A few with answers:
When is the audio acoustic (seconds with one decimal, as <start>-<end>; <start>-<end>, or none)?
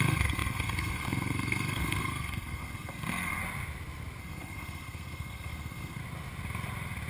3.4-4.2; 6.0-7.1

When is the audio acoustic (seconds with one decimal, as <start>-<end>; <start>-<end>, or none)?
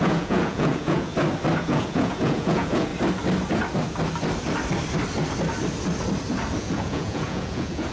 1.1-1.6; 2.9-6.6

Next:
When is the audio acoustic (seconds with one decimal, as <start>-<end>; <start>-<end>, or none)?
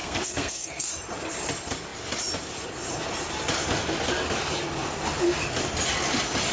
0.9-6.5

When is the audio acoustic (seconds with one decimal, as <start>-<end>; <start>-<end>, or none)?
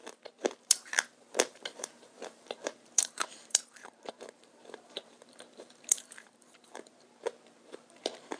0.0-0.6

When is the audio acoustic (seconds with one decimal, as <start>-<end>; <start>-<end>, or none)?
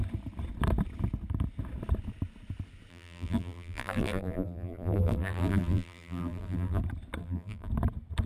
0.0-2.9; 6.8-7.2; 7.7-8.3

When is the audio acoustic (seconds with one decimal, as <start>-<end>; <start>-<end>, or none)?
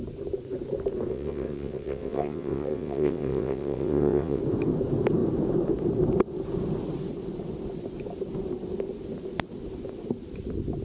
0.0-1.1; 4.4-10.8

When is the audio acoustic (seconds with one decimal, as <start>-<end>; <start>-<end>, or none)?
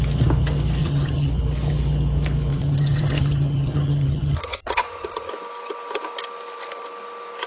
0.0-0.8; 1.3-2.5; 5.3-7.5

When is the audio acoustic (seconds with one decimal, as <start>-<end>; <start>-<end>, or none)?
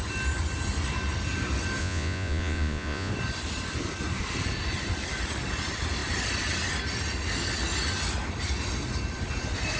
0.0-1.8; 3.1-9.8